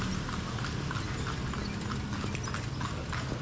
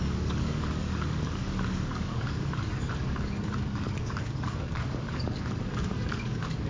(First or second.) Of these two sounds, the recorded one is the first